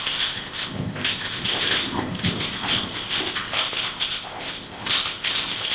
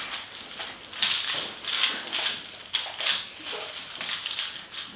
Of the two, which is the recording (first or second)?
second